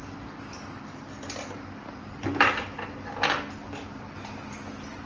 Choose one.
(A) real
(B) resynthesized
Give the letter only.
A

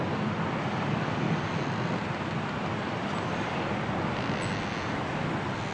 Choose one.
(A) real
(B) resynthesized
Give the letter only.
A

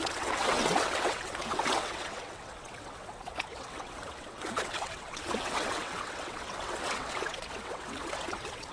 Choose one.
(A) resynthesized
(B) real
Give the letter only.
A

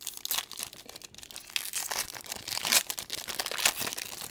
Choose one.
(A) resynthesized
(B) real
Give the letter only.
B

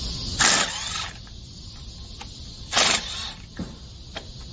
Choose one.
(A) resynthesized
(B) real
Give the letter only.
B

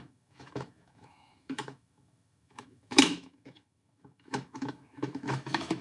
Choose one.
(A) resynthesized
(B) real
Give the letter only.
A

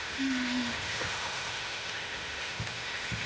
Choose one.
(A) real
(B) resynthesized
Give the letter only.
B